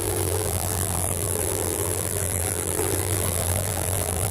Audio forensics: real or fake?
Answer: fake